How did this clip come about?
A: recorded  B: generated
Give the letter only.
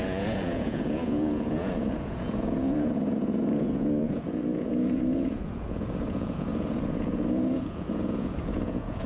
B